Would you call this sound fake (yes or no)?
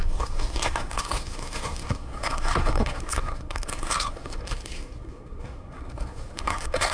yes